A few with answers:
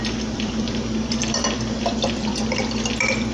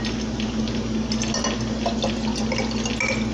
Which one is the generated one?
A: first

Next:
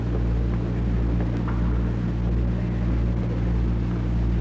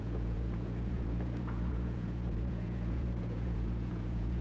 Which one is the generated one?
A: second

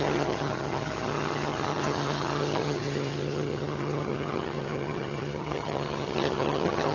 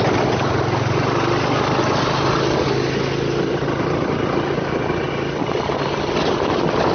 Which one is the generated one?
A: first